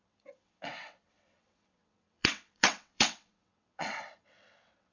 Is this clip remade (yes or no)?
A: yes